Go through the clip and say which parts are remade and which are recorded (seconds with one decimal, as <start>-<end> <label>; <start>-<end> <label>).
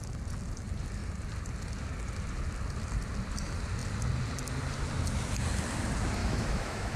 0.0-6.2 recorded; 6.2-7.0 remade